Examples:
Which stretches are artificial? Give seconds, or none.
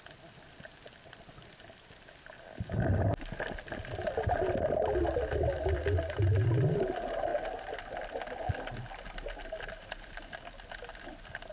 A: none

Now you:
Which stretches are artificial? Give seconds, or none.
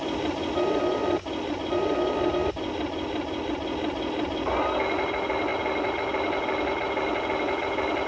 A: none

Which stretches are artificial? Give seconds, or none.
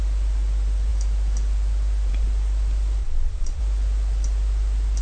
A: 3.0-3.6 (vocoder, Vocos)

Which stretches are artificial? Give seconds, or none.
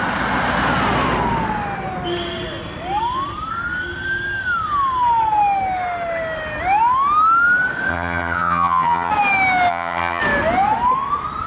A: 7.9-9.1 (vocoder, HiFi-GAN); 9.7-10.2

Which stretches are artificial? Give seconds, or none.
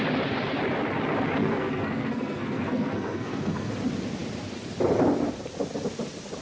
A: 1.4-3.7 (codec, SNAC)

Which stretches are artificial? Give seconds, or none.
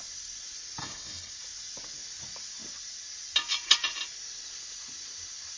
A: 0.8-1.3 (codec, HILCodec)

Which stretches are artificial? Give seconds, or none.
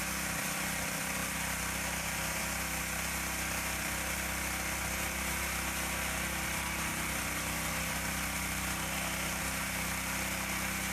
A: none